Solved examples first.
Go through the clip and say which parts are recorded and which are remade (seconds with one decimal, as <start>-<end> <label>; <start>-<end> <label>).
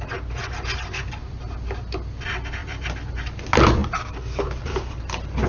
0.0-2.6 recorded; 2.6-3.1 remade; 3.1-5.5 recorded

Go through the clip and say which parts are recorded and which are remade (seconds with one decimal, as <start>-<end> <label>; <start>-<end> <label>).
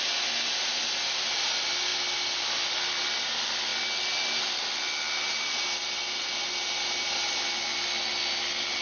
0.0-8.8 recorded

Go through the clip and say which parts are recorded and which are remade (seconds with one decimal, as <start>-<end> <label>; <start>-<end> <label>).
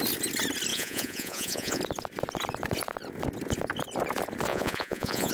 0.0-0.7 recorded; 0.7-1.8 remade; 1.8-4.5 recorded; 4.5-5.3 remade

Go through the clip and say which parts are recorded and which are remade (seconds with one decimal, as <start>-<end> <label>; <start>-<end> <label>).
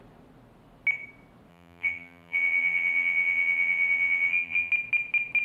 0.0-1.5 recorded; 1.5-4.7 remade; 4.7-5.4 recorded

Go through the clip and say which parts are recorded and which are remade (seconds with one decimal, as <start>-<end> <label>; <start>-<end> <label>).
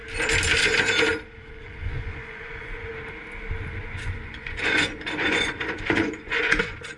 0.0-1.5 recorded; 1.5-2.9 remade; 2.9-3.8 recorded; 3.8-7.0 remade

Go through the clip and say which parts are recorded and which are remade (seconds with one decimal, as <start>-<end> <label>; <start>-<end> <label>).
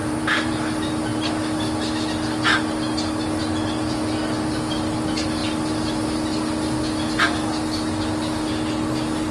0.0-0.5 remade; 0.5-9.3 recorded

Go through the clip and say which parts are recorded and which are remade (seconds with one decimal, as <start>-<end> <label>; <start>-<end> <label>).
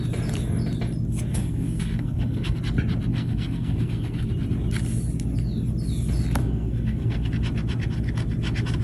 0.0-1.3 recorded; 1.3-2.6 remade; 2.6-3.1 recorded; 3.1-4.3 remade; 4.3-6.4 recorded; 6.4-7.3 remade; 7.3-8.8 recorded